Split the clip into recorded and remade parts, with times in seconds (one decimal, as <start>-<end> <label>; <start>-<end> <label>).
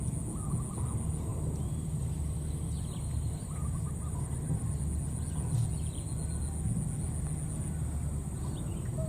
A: 0.0-1.3 recorded; 1.3-4.8 remade; 4.8-9.1 recorded